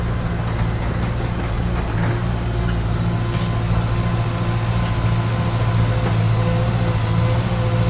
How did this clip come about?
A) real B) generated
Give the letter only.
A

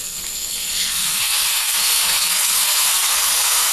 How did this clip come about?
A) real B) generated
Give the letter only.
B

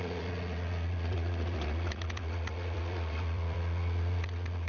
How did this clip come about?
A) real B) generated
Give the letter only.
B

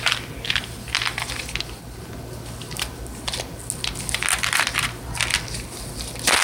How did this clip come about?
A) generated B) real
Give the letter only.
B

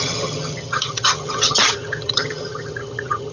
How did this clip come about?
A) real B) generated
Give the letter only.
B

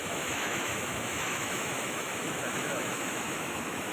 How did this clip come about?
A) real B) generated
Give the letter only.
B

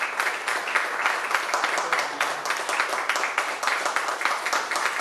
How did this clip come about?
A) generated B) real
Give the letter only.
A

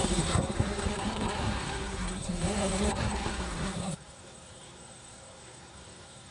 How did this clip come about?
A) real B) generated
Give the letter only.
B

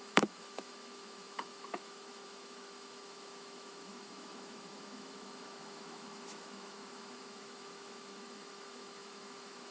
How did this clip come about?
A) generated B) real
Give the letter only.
A